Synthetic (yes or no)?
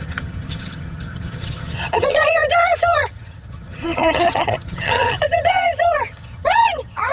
yes